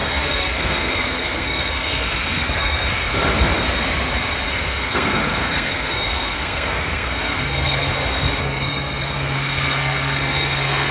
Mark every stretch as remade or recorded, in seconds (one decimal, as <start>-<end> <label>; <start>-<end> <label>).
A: 0.0-3.1 remade; 3.1-4.5 recorded; 4.5-7.9 remade; 7.9-8.4 recorded; 8.4-10.9 remade